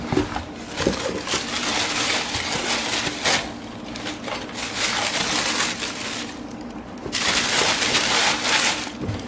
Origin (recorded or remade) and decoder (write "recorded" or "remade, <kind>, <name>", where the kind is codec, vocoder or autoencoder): recorded